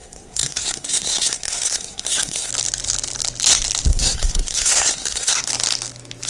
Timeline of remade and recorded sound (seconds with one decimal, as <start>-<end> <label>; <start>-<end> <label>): 0.0-2.5 remade; 2.5-3.9 recorded; 3.9-5.5 remade; 5.5-6.3 recorded